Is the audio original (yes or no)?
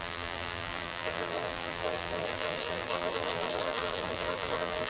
no